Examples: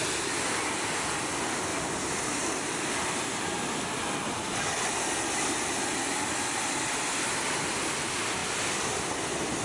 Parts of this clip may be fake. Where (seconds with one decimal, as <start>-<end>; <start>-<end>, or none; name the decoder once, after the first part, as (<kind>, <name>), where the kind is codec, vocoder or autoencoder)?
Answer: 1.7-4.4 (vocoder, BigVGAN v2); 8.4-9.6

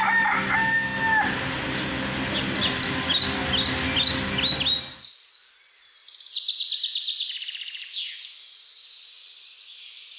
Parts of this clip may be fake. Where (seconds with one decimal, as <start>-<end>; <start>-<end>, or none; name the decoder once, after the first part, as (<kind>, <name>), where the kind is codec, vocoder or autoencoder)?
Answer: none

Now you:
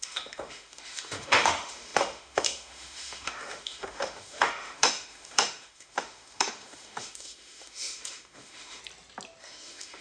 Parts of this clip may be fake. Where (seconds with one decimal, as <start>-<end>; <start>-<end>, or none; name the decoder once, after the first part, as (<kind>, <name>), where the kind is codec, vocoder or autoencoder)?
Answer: 0.0-8.8 (autoencoder, DAC-VAE); 9.4-10.0

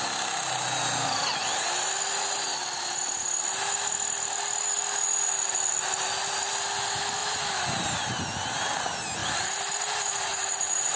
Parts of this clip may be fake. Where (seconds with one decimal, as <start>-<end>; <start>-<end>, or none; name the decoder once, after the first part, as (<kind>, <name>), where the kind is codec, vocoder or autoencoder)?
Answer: 9.2-11.0 (vocoder, BigVGAN v2)